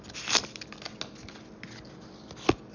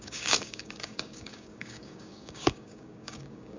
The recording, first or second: first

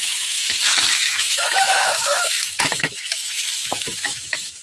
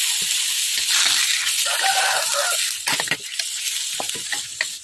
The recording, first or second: second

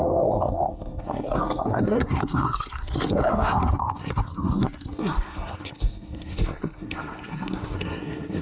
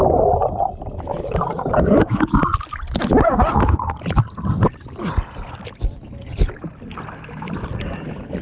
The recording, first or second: second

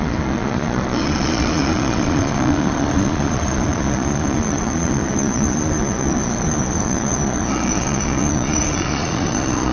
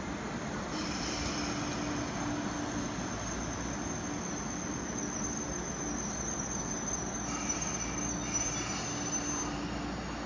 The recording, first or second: second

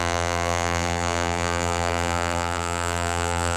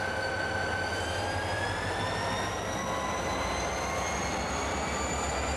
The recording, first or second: second